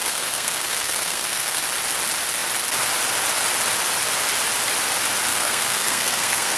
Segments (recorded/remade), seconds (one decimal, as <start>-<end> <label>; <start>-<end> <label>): 0.0-1.6 remade; 1.6-5.3 recorded; 5.3-6.6 remade